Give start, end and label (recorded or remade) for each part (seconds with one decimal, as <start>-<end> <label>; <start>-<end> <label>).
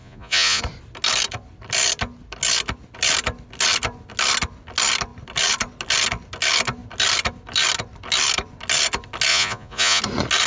0.0-0.6 remade; 0.6-9.3 recorded; 9.3-10.0 remade; 10.0-10.5 recorded